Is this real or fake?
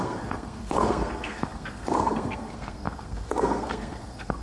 fake